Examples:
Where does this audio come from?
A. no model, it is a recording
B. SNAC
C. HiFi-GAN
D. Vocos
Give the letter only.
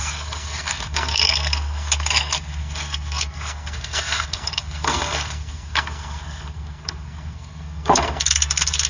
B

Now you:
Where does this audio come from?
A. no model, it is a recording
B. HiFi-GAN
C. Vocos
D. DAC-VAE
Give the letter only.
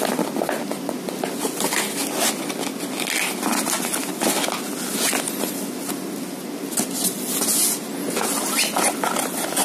A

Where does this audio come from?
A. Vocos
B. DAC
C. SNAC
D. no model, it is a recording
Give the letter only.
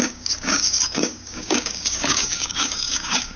B